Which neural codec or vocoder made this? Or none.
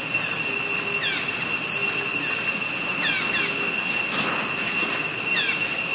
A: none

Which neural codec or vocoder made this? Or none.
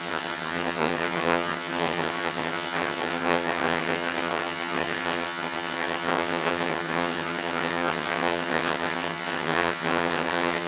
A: vocoder, HiFi-GAN